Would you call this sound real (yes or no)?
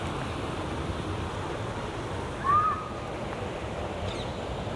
yes